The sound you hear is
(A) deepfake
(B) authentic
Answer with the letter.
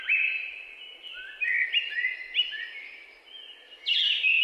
B